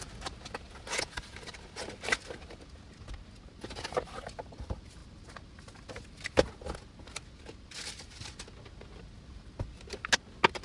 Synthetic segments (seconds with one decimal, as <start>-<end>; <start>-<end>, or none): none